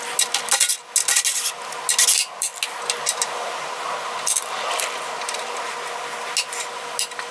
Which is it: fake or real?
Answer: real